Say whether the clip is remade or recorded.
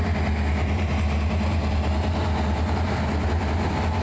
recorded